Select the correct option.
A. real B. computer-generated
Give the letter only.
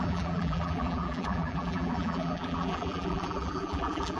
B